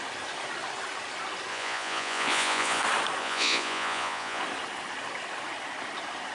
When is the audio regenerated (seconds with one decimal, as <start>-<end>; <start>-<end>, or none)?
1.5-2.8; 3.2-4.4